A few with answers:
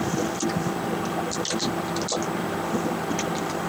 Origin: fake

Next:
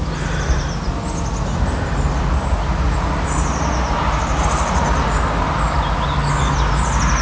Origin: real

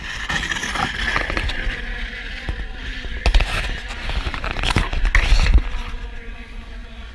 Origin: real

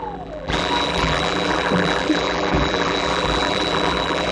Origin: fake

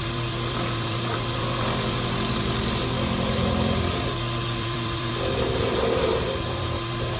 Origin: fake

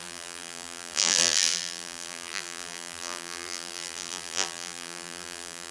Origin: fake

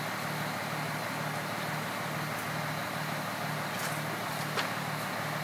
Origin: real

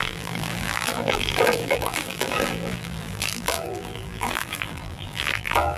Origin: fake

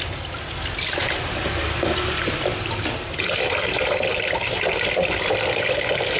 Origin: fake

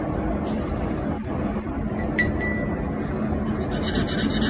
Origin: real